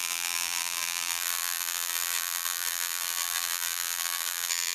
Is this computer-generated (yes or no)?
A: yes